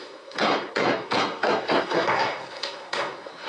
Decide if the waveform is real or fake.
fake